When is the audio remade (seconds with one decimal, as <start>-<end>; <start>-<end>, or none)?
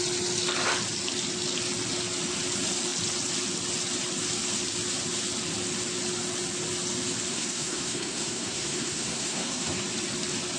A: 7.3-9.8